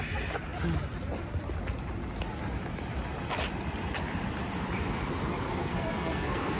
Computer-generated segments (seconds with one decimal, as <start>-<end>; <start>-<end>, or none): 5.5-6.6